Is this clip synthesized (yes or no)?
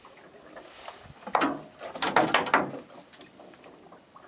no